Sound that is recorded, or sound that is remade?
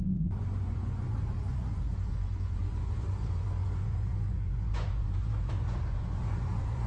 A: remade